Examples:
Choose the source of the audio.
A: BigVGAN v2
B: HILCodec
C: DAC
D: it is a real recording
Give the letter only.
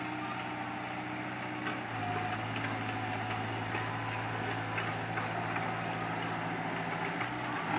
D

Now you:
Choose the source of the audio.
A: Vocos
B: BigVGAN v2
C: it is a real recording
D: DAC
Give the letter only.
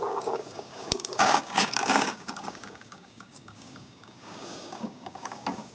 D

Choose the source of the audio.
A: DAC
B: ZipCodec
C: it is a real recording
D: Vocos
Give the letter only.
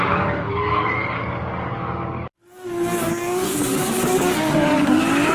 A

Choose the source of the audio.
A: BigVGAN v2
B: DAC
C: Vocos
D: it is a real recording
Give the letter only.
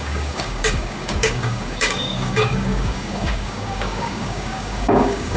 B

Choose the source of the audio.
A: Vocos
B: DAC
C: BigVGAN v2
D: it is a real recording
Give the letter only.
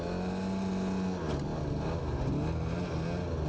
D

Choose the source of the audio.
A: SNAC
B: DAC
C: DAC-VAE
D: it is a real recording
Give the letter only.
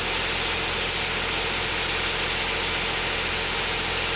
D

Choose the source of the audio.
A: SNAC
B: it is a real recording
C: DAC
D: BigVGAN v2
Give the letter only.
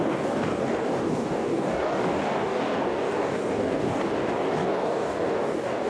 C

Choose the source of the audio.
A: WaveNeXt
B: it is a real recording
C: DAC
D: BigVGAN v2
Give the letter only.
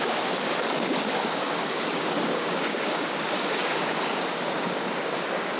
C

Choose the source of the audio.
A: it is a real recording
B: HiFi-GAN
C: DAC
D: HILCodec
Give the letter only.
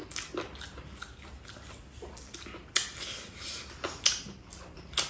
A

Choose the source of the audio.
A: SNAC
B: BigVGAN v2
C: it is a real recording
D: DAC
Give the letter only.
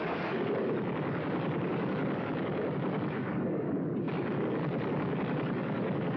D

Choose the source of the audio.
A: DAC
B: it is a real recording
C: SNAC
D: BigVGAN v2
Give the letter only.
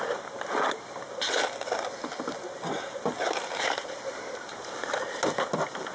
B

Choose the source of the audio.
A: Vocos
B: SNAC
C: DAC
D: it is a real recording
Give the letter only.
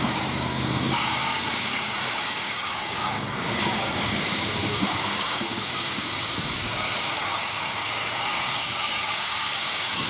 C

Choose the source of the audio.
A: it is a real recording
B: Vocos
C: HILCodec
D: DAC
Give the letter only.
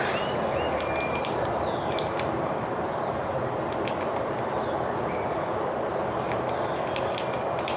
A